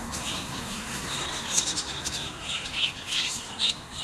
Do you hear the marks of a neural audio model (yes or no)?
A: yes